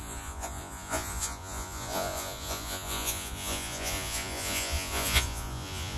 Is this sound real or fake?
fake